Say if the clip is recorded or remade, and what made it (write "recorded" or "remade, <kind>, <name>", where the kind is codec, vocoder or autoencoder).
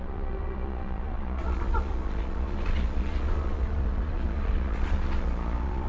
remade, vocoder, Vocos